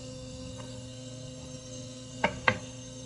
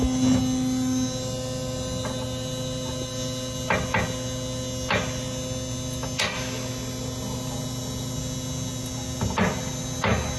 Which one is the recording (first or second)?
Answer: second